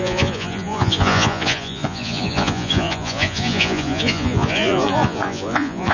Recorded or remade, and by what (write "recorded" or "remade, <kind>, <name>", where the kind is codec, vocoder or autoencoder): remade, vocoder, Vocos